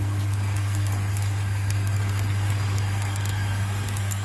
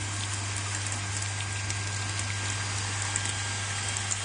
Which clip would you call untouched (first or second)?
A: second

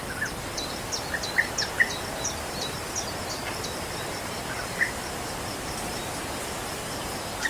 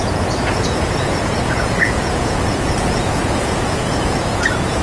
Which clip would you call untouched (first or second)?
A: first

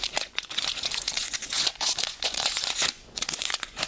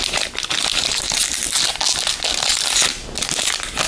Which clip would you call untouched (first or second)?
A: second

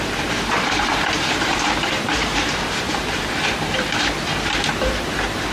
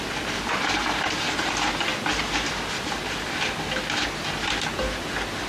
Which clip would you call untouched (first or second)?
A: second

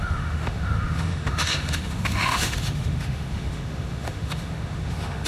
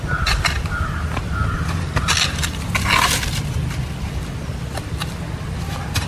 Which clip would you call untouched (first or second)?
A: second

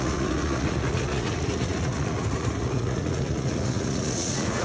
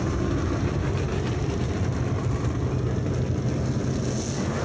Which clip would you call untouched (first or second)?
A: second